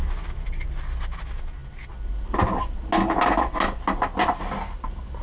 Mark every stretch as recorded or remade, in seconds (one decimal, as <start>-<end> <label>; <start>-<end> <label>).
0.0-5.2 recorded